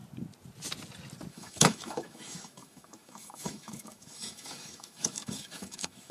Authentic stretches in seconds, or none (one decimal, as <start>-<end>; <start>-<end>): 0.0-1.3